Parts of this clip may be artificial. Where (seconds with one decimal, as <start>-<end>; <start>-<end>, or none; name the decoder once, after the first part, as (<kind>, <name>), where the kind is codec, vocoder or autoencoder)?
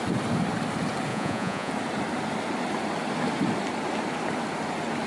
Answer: 1.1-1.7 (vocoder, Vocos)